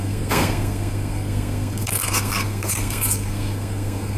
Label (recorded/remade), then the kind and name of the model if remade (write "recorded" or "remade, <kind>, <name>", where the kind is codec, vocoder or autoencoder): remade, codec, SNAC